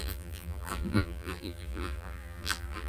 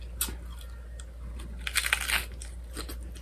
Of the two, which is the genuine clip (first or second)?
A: second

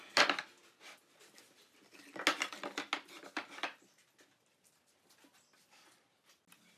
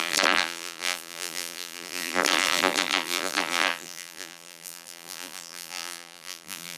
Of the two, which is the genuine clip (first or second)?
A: first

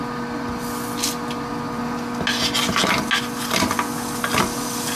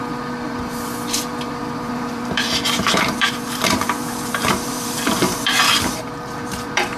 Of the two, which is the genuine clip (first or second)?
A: first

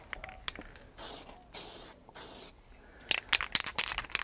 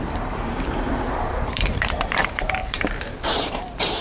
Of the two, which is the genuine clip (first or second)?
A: first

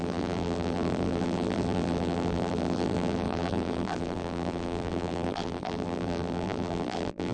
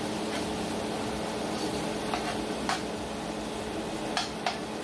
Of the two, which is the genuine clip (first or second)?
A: second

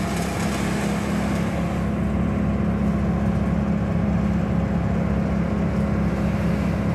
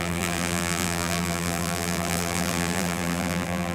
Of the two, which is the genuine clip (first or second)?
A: first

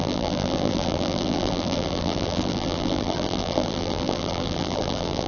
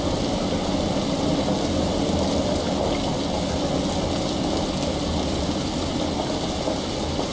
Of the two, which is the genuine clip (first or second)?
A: second